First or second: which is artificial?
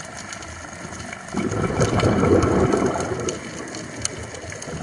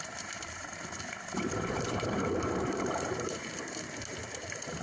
second